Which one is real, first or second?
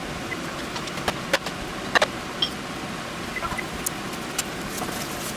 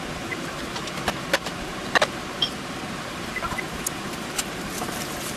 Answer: first